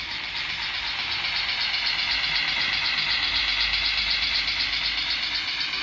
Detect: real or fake real